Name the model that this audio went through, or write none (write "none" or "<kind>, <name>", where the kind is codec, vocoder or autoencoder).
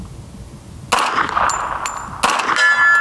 none